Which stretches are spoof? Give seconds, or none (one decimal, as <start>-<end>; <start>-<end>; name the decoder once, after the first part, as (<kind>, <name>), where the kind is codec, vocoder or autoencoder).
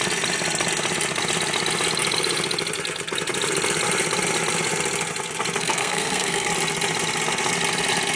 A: 5.6-6.5 (codec, SNAC)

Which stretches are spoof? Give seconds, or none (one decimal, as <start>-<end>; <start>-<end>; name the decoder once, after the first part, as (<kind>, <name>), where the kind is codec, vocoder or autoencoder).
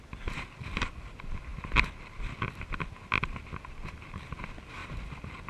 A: 4.8-5.5 (vocoder, BigVGAN v2)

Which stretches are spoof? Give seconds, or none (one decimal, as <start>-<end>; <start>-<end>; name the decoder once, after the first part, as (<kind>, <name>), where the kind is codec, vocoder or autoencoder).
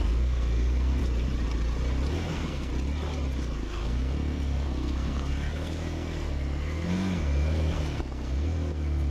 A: 0.0-1.0 (codec, SNAC); 2.1-2.7; 3.4-9.1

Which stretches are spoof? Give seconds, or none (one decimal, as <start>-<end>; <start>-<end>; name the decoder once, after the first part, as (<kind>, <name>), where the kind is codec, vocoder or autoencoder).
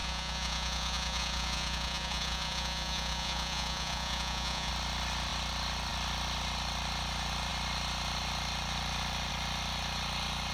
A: 0.0-4.7 (vocoder, Vocos)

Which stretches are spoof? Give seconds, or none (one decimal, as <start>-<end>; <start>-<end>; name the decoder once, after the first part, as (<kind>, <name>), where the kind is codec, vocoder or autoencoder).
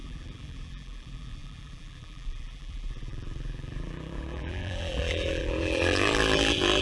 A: 0.0-6.8 (vocoder, BigVGAN v2)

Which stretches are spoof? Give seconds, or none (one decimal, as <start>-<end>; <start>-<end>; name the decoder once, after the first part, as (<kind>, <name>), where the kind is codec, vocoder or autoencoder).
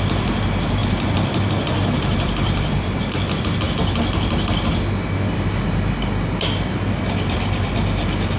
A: 0.8-3.4 (vocoder, BigVGAN v2)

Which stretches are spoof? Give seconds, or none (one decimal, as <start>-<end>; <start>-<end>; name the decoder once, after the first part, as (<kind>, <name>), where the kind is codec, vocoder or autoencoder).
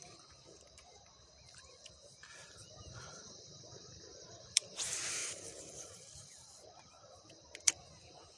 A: 0.0-8.4 (vocoder, BigVGAN v2)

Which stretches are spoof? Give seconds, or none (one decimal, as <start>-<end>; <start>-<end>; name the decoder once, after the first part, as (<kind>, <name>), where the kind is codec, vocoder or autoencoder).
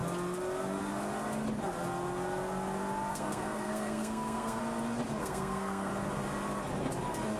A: 3.1-4.6 (codec, SNAC); 5.2-5.9